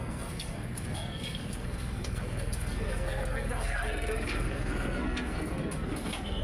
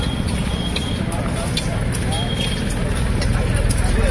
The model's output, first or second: first